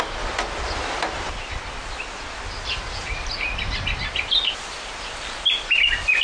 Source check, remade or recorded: recorded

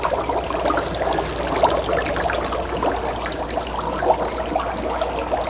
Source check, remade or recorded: recorded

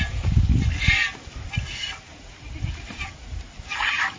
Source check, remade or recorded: recorded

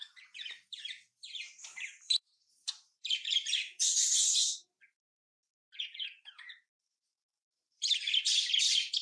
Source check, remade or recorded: remade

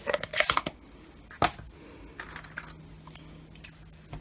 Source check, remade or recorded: recorded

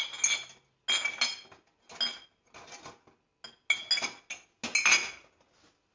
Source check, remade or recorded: recorded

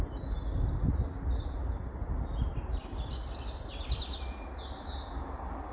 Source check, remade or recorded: recorded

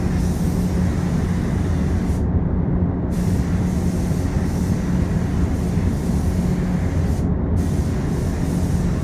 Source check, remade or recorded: recorded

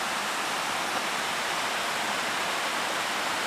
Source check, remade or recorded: recorded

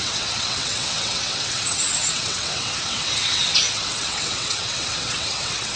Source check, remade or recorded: remade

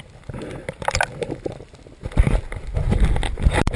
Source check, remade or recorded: recorded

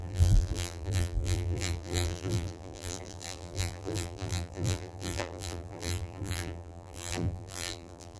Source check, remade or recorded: remade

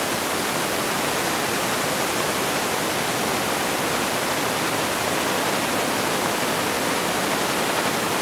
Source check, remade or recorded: recorded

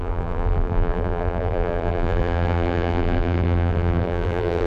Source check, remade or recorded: remade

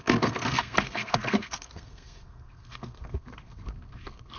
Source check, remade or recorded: remade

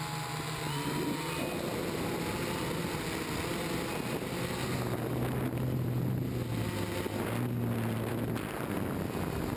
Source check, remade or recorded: recorded